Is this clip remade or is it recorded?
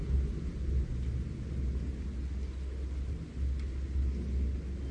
recorded